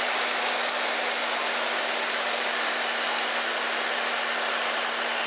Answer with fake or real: real